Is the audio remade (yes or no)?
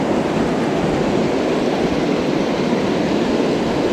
no